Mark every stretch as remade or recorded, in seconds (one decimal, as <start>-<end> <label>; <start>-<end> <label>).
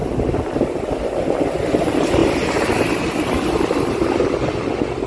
0.0-5.1 recorded